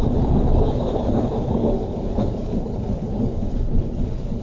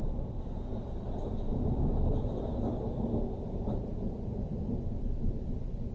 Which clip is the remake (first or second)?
first